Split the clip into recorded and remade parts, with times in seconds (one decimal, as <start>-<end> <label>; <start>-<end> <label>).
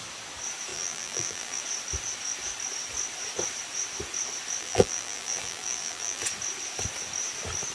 0.0-0.7 recorded; 0.7-1.6 remade; 1.6-4.6 recorded; 4.6-6.2 remade; 6.2-7.7 recorded